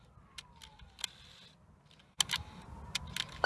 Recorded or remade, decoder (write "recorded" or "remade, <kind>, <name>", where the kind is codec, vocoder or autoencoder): recorded